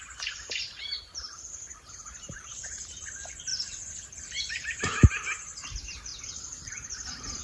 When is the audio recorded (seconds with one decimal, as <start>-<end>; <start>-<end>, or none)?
6.1-7.4